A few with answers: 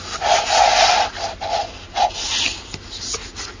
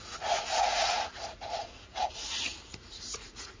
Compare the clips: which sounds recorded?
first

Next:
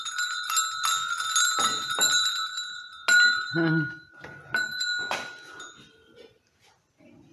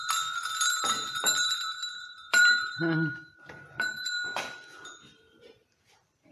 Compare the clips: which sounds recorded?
first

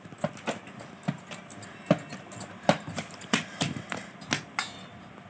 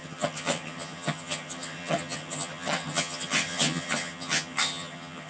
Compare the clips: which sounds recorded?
first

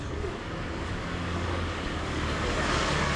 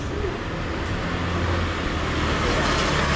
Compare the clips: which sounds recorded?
second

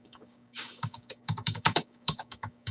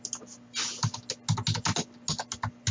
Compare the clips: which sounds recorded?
second